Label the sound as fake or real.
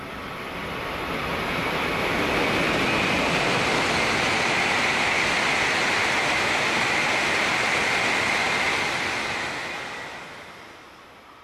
real